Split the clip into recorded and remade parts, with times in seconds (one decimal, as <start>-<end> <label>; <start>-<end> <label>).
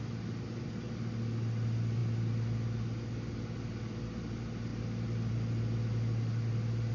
0.0-6.9 recorded